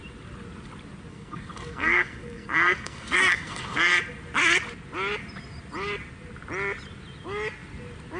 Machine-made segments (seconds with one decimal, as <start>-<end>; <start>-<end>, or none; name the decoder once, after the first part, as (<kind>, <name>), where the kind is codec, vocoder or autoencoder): 1.1-3.9 (codec, SNAC)